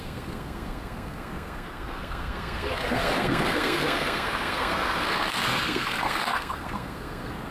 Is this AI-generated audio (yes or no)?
yes